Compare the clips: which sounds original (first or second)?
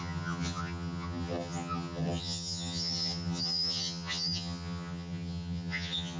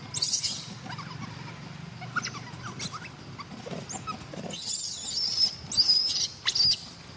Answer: second